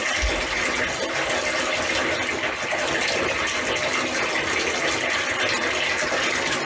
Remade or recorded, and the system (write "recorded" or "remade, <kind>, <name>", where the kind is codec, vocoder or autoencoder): recorded